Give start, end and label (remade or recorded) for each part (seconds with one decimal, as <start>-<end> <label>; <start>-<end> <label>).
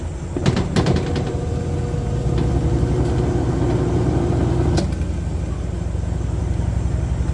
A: 0.0-0.4 recorded; 0.4-1.7 remade; 1.7-7.3 recorded